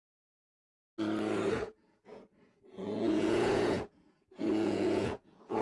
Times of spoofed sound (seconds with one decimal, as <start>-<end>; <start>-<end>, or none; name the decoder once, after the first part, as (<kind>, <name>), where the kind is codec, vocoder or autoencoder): 0.0-0.8 (vocoder, Vocos); 1.5-5.6